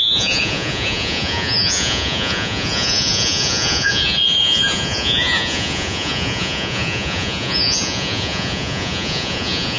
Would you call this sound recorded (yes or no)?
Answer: no